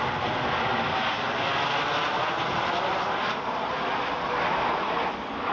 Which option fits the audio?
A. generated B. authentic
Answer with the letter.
B